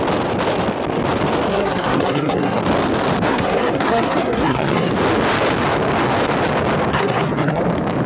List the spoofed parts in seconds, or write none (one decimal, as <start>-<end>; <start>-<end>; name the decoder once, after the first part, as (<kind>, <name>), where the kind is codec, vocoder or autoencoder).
1.5-2.6 (codec, SNAC); 3.3-4.9; 6.9-7.6